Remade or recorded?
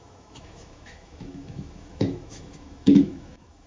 remade